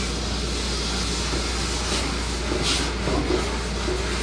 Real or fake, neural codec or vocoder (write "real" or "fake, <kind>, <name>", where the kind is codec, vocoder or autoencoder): real